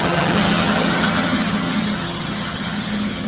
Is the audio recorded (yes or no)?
no